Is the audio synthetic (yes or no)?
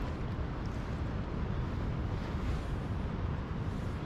no